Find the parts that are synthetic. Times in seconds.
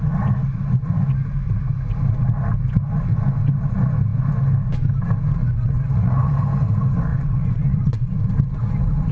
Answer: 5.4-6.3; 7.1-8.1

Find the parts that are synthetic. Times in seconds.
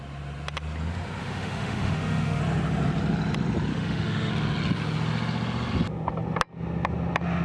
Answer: 1.2-2.4; 3.7-4.3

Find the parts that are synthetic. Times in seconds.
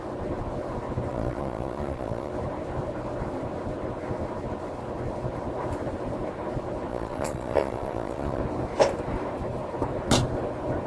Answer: 1.1-2.3; 6.9-8.4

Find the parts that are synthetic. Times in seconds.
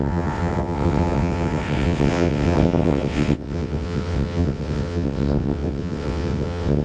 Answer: 0.0-6.8